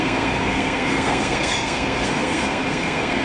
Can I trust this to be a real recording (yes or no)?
no